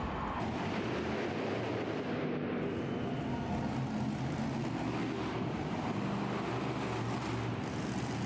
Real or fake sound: real